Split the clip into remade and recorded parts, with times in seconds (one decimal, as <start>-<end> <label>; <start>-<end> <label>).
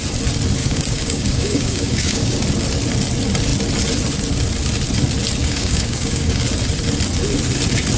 0.0-0.6 recorded; 0.6-2.4 remade; 2.4-5.4 recorded; 5.4-6.4 remade; 6.4-8.0 recorded